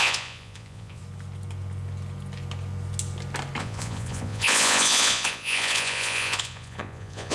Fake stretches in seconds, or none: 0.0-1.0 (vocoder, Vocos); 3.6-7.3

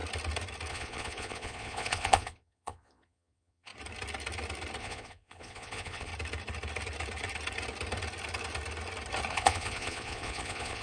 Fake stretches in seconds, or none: 0.7-3.7 (vocoder, Vocos); 4.8-6.1; 9.3-10.8

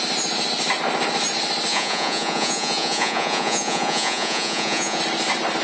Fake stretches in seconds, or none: 1.7-5.0 (vocoder, Vocos)

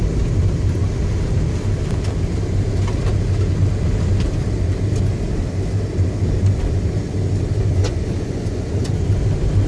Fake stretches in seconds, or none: 7.7-9.1 (vocoder, Vocos)

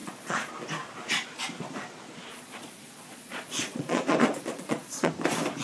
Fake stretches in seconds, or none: 0.0-0.5 (vocoder, Vocos); 2.3-5.1

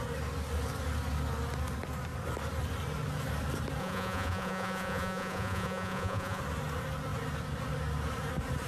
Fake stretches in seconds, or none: 3.8-6.4 (vocoder, Vocos)

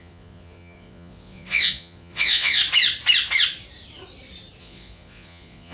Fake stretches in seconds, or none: 0.0-2.6 (vocoder, Vocos); 4.6-5.7